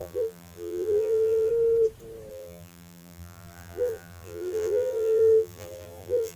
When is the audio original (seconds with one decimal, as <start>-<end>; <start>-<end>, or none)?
1.5-2.3